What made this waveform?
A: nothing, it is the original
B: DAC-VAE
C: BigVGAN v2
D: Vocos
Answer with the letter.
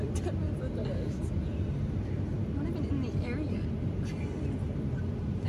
A